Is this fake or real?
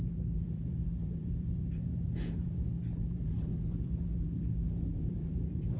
fake